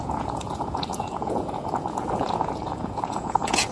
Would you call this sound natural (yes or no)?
no